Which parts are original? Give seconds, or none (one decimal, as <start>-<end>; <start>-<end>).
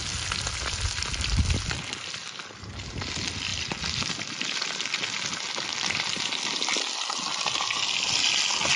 0.0-8.8